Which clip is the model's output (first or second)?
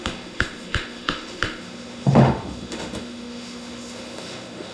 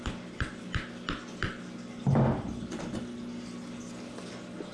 first